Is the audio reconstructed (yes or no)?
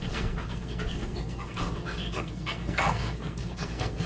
yes